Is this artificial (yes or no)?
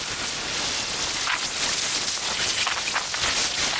no